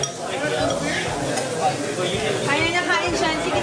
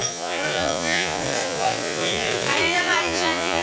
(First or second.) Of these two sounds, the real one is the first